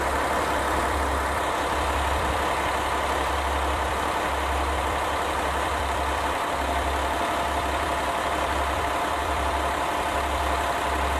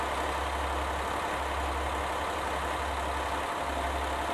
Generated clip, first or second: first